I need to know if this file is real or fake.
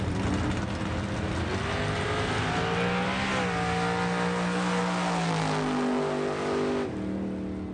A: real